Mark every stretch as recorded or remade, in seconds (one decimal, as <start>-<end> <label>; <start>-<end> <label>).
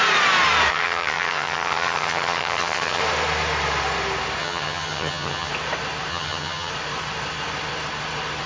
0.0-0.7 recorded; 0.7-3.0 remade; 3.0-4.4 recorded; 4.4-5.5 remade; 5.5-6.1 recorded; 6.1-6.7 remade; 6.7-8.5 recorded